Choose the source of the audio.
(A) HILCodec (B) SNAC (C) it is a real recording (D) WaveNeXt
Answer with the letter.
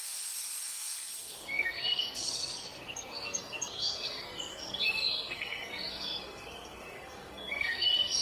B